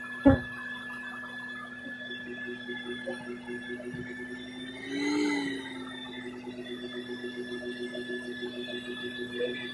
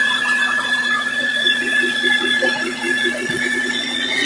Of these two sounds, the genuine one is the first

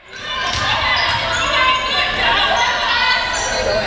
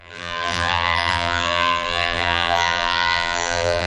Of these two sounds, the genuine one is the first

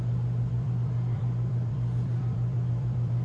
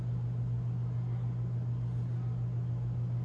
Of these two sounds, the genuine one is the second